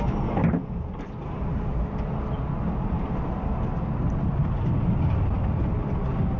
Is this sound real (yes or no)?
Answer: yes